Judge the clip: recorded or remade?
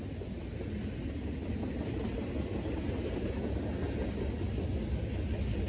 recorded